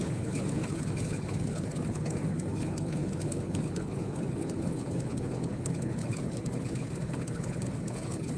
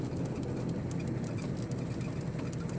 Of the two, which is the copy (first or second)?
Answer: first